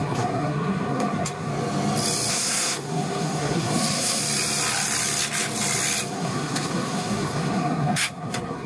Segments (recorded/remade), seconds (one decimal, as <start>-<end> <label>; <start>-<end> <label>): 0.0-1.5 remade; 1.5-2.3 recorded; 2.3-4.2 remade; 4.2-6.1 recorded; 6.1-8.7 remade